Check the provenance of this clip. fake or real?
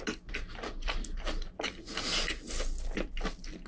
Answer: real